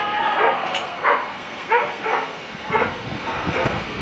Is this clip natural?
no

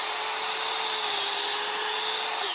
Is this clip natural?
yes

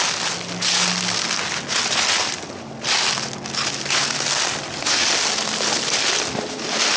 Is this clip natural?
yes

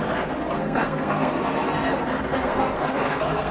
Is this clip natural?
no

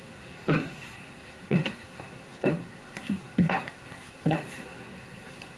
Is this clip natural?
no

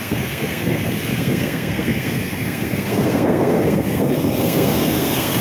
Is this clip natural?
no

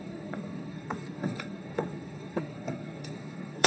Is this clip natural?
no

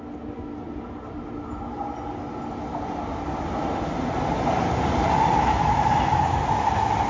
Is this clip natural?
yes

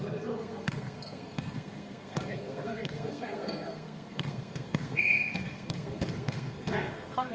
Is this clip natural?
no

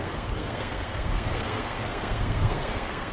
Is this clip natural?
no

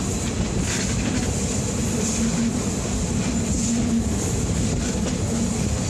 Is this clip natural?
yes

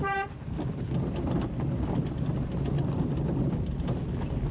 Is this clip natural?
yes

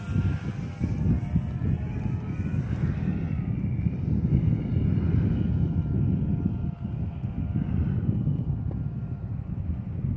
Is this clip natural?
yes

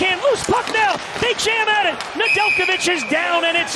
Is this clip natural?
yes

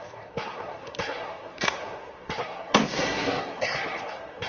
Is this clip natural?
no